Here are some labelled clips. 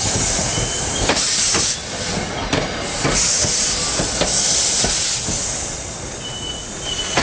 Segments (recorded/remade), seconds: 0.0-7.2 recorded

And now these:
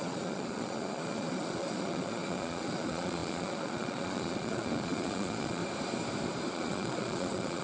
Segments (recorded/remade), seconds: 0.0-5.6 remade; 5.6-6.5 recorded; 6.5-7.6 remade